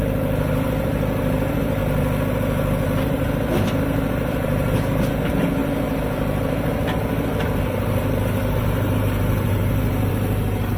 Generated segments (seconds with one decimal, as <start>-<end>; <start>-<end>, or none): 0.0-1.8; 2.3-10.8